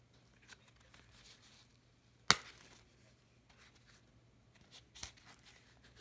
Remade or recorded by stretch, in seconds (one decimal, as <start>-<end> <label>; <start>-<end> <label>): 0.0-6.0 recorded